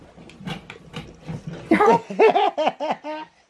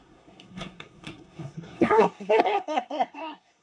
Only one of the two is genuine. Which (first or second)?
first